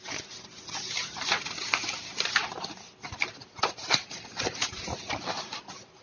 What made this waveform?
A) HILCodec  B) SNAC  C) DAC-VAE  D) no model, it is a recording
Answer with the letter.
D